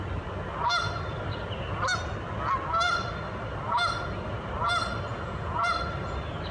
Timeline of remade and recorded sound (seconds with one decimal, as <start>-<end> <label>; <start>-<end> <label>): 0.0-5.1 recorded; 5.1-5.7 remade; 5.7-6.5 recorded